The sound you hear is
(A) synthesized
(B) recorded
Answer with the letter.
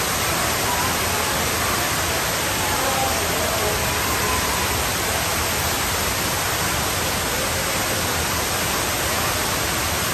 B